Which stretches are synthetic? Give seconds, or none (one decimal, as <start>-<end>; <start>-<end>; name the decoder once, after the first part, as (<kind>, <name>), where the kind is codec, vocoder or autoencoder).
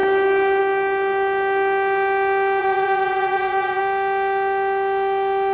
2.6-3.8 (vocoder, Vocos)